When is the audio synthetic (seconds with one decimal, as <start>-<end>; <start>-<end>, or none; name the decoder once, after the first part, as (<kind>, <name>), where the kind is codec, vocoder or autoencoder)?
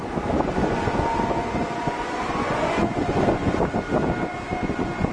0.6-3.7 (vocoder, Vocos); 4.3-5.1